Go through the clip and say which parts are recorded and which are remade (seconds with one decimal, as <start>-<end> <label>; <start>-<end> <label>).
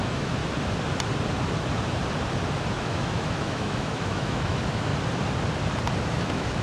0.0-0.4 remade; 0.4-2.8 recorded; 2.8-4.9 remade; 4.9-6.1 recorded; 6.1-6.6 remade